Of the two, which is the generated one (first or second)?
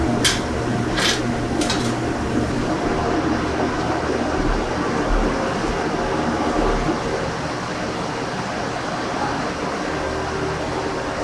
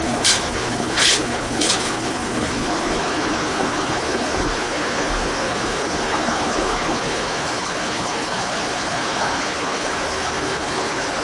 second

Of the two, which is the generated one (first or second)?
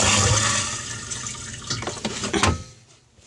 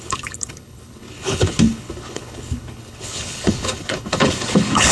second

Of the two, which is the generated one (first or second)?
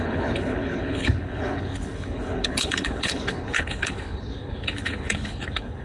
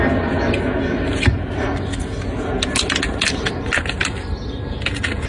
first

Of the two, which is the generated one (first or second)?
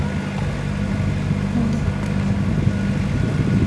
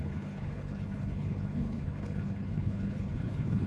second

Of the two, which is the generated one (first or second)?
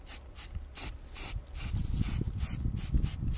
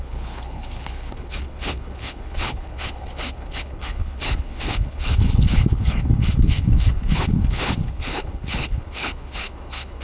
second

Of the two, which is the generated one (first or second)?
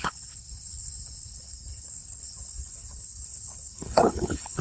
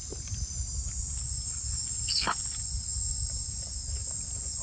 first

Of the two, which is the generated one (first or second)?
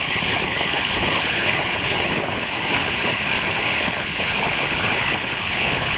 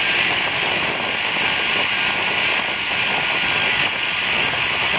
first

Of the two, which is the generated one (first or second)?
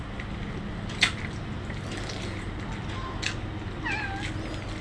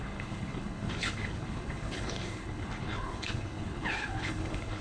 second